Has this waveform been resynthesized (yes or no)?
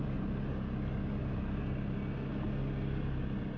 no